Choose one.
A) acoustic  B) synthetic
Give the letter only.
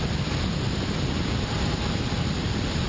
B